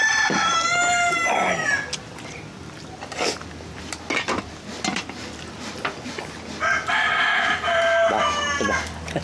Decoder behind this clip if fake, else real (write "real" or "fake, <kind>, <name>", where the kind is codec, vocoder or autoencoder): real